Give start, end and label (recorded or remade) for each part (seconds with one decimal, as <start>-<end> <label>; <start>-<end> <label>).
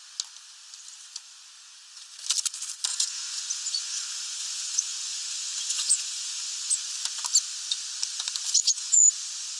0.0-2.9 recorded; 2.9-6.7 remade; 6.7-8.6 recorded; 8.6-9.1 remade; 9.1-9.6 recorded